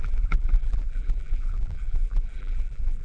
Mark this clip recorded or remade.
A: remade